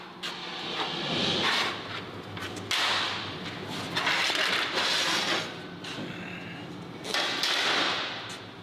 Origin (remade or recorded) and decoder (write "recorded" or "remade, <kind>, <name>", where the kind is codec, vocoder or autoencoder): recorded